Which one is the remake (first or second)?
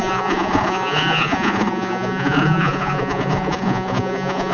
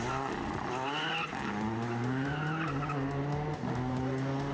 first